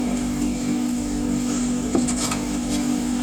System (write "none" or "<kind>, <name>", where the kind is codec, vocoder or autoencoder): codec, DAC